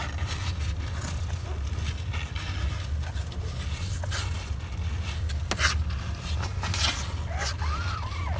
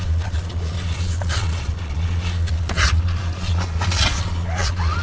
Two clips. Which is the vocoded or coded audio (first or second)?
second